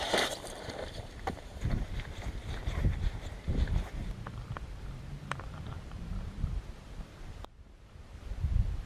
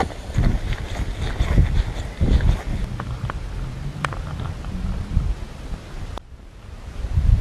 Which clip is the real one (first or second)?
second